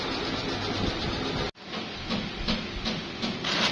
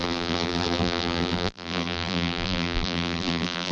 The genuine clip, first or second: first